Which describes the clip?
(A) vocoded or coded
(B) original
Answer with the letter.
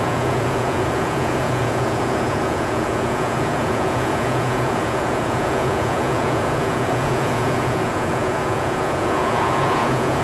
A